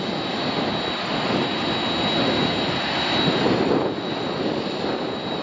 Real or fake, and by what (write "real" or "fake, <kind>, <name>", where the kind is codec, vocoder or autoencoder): real